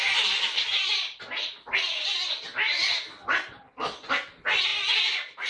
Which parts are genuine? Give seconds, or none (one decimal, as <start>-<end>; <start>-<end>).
0.0-5.5